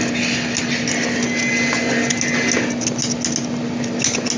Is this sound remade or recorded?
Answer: recorded